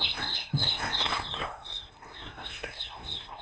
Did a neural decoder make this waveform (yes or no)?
yes